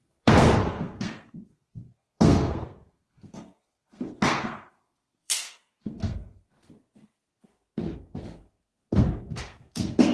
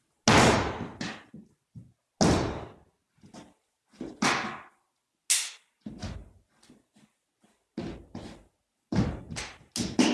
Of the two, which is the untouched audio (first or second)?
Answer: second